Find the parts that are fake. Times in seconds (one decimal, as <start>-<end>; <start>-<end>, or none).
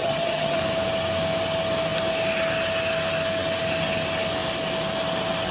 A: 0.0-0.6